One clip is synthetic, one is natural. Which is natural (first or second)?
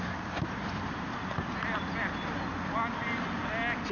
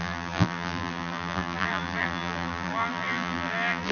first